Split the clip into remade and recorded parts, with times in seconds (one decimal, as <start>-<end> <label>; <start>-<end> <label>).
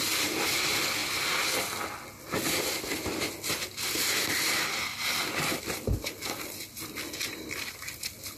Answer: 0.0-8.4 recorded